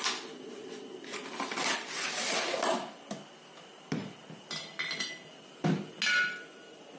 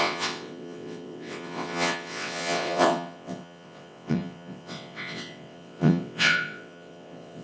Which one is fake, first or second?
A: second